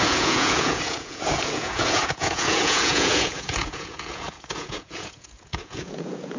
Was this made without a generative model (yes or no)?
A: no